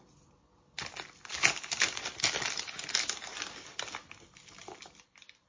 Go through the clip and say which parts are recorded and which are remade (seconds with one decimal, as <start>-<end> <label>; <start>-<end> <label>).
0.0-5.5 recorded